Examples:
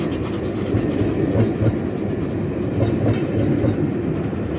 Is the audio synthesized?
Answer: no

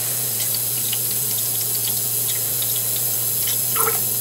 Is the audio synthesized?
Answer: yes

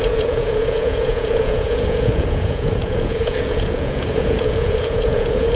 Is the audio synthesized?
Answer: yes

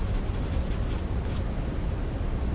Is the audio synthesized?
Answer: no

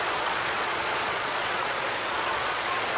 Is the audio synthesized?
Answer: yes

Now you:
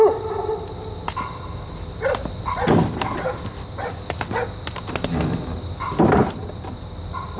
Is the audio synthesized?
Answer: no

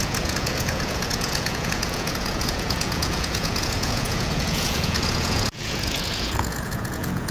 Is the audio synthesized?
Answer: yes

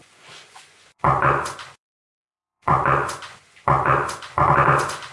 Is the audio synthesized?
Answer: yes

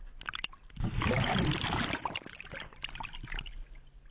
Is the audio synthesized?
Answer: no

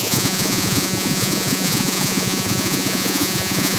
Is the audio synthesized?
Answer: yes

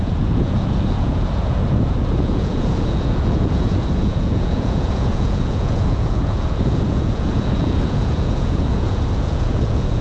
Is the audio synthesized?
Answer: yes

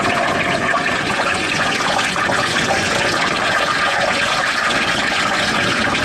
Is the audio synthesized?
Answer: yes